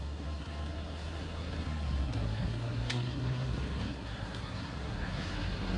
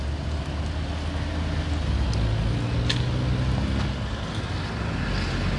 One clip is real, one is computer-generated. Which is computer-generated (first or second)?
first